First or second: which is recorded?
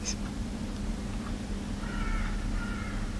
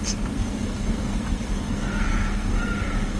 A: first